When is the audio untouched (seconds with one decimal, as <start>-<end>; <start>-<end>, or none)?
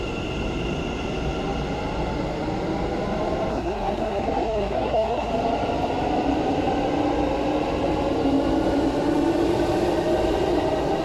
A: 0.0-3.5; 5.3-11.0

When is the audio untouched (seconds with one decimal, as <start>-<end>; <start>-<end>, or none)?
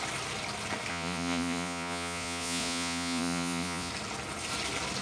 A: 0.0-0.9; 3.9-5.0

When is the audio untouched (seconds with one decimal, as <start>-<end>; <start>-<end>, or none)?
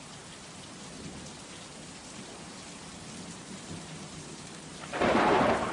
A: 0.0-2.0; 2.5-4.7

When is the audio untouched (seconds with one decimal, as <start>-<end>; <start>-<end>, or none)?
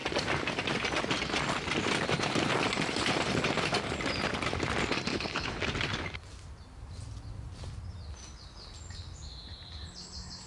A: 0.0-5.1; 5.6-10.5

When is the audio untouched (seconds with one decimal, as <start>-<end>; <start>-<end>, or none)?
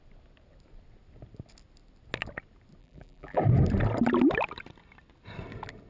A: 0.0-2.8; 3.4-5.9